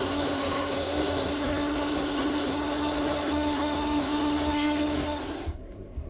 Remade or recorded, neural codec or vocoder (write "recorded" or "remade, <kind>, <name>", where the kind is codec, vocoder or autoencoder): remade, codec, SNAC